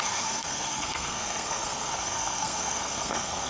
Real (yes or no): no